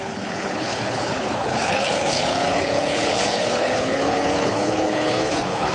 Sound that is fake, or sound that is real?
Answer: fake